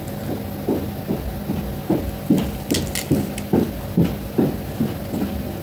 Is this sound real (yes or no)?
yes